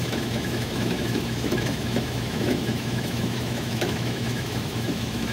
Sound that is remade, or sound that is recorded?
remade